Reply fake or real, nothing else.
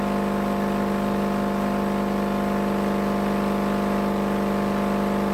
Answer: real